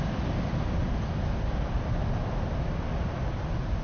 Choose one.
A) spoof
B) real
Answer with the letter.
B